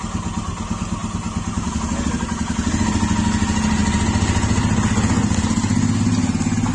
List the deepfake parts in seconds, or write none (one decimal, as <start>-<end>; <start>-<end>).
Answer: none